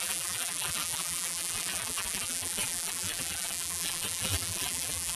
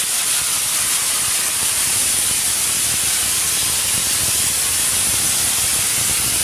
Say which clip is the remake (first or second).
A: first